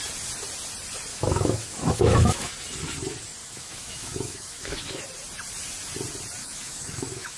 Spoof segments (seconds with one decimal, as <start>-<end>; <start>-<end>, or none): 1.1-2.5; 3.4-5.0; 6.4-7.4